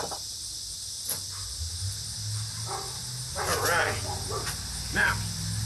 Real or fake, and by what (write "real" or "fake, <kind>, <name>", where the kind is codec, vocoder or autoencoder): real